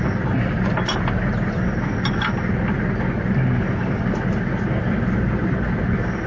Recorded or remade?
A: recorded